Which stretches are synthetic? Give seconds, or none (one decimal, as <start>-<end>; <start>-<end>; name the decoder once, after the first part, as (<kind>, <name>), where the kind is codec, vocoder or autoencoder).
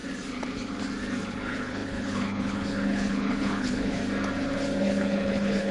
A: 1.3-4.0 (codec, HILCodec); 4.8-5.7